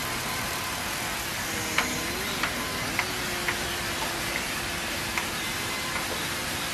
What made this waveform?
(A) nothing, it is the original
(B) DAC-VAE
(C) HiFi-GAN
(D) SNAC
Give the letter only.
A